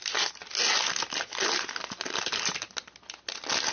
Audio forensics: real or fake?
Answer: real